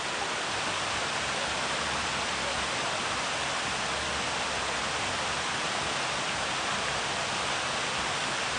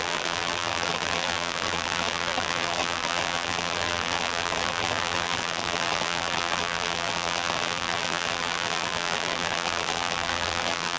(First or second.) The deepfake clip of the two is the second